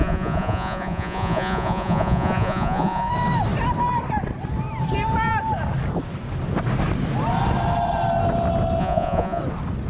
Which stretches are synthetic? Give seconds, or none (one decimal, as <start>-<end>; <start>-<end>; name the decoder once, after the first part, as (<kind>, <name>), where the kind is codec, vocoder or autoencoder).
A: 0.0-3.1 (vocoder, Vocos); 8.8-9.4